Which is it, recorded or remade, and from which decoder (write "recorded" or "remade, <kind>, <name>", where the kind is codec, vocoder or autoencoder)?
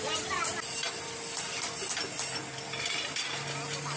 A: recorded